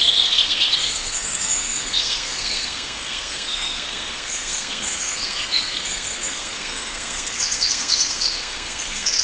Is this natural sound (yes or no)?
no